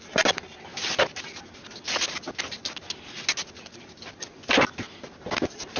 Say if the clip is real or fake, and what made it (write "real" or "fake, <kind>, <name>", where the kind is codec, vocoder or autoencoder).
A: real